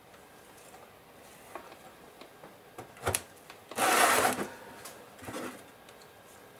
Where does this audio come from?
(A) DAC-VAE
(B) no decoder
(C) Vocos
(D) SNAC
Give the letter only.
B